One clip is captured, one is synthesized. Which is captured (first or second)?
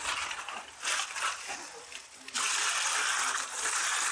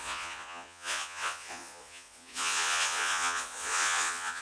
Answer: first